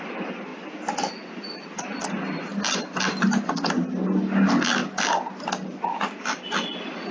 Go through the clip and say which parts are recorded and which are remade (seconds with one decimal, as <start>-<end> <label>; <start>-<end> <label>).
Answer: 0.0-7.1 recorded